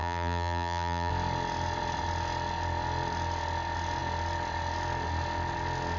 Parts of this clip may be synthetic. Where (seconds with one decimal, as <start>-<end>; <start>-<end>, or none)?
0.0-1.1